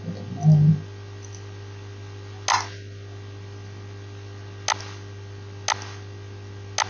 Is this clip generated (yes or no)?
no